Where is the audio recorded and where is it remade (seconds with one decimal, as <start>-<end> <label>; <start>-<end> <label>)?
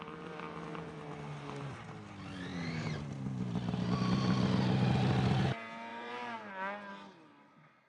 0.0-5.9 recorded; 5.9-6.5 remade; 6.5-7.9 recorded